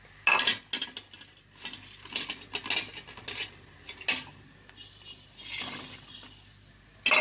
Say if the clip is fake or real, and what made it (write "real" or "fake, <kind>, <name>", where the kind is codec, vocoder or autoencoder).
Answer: real